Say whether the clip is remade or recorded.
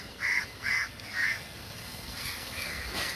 remade